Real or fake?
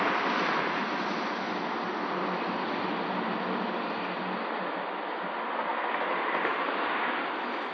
real